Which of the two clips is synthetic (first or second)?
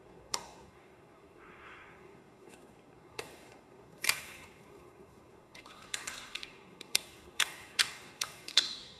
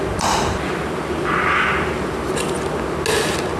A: first